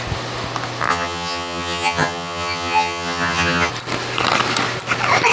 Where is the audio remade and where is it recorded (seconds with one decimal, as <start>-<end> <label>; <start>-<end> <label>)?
0.0-0.9 recorded; 0.9-3.7 remade; 3.7-5.3 recorded